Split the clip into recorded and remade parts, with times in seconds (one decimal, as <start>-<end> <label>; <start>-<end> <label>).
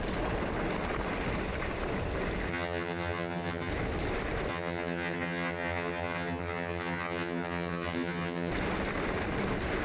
0.0-2.5 recorded; 2.5-3.7 remade; 3.7-4.5 recorded; 4.5-8.5 remade; 8.5-9.8 recorded